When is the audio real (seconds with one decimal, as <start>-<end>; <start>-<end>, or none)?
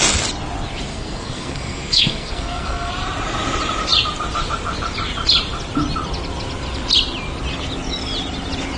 0.0-0.9; 2.9-8.8